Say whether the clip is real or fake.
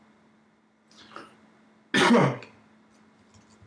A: real